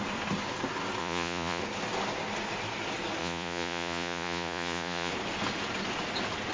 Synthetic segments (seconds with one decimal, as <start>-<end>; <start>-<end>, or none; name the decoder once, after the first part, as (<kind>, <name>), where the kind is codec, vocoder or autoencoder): 1.0-1.6 (vocoder, Vocos); 3.2-5.1